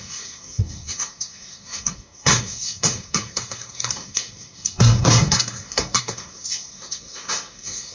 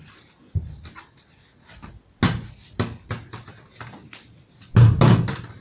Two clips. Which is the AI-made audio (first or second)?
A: first